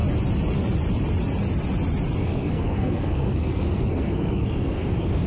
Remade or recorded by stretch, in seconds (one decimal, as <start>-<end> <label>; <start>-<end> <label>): 0.0-2.2 recorded; 2.2-5.3 remade